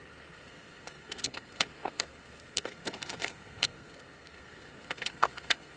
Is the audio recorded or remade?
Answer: remade